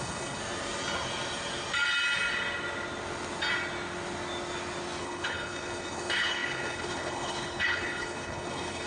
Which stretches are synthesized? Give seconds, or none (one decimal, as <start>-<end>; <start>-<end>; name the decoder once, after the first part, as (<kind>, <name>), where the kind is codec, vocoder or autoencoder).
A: 0.0-0.4 (codec, HILCodec); 5.0-8.9